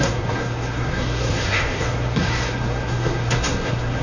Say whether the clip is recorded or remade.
remade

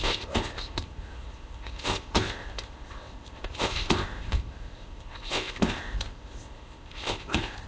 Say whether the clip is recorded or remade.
remade